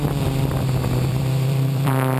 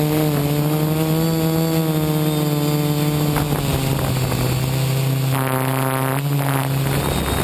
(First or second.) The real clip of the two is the second